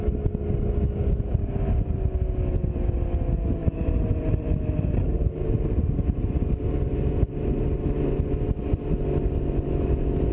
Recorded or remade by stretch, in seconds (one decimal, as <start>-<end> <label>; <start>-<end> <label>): 0.0-3.6 recorded; 3.6-8.3 remade; 8.3-10.3 recorded